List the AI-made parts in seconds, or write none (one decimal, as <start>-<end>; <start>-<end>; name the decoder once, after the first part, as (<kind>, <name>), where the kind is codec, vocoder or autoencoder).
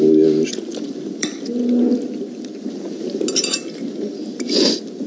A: 0.7-1.6 (vocoder, BigVGAN v2)